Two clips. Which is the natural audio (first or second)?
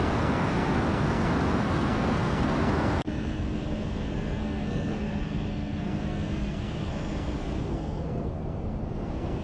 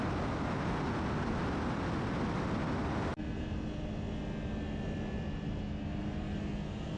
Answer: second